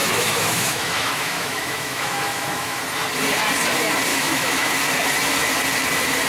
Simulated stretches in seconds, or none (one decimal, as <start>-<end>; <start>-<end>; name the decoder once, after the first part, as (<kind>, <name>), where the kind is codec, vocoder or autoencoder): 0.0-2.8 (autoencoder, DAC-VAE); 4.1-4.7